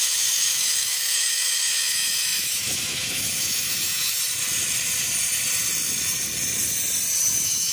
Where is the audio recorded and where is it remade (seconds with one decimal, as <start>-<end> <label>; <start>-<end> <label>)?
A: 0.0-4.2 remade; 4.2-7.2 recorded; 7.2-7.7 remade